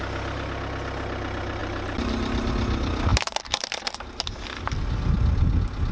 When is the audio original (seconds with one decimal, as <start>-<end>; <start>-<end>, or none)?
0.0-1.6; 2.5-3.1; 4.2-5.9